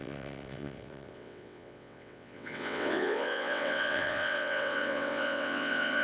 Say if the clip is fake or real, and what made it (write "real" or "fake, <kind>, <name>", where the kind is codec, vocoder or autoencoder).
fake, vocoder, WaveNeXt